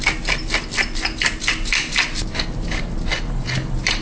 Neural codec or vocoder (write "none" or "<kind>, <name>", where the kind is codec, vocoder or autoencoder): none